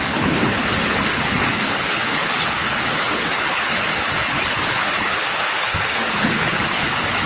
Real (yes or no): no